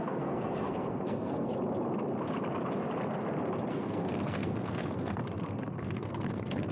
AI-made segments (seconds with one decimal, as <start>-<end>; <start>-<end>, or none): 0.0-1.5; 3.7-5.2; 5.8-6.7